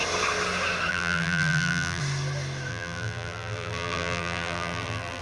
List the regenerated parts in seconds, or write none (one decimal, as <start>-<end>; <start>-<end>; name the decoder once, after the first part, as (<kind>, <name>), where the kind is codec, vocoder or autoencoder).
0.9-2.0 (vocoder, BigVGAN v2); 2.7-5.2